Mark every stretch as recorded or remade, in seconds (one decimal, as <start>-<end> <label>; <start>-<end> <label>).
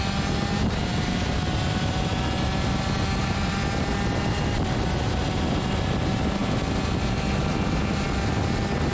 0.0-8.9 recorded